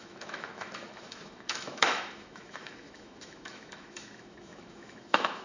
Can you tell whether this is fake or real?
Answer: fake